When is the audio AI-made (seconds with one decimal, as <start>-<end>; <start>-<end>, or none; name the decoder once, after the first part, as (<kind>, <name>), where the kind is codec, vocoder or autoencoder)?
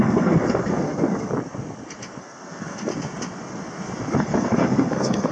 0.0-1.3 (codec, SNAC); 2.2-2.9; 4.1-5.3